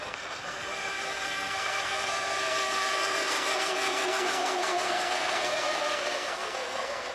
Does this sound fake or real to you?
fake